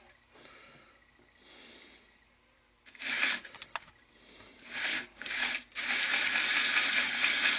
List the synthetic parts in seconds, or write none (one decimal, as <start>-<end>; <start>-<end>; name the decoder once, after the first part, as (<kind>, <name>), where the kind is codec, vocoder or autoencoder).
4.9-5.9 (codec, DAC)